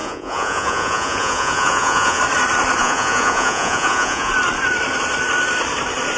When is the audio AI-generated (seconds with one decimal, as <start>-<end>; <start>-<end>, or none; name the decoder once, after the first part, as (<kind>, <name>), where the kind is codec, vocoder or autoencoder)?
0.0-2.2 (vocoder, Vocos); 2.8-4.3